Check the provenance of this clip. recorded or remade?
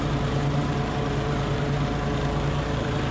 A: remade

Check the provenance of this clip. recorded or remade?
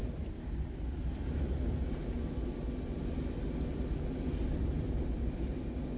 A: recorded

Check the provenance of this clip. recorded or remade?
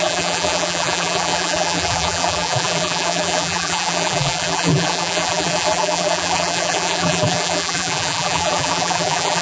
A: remade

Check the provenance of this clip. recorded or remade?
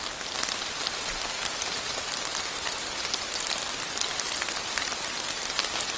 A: recorded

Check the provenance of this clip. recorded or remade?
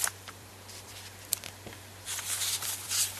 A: remade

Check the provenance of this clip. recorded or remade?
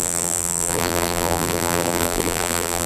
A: remade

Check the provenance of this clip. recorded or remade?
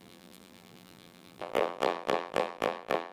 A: remade